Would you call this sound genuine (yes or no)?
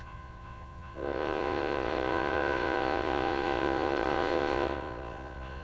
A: no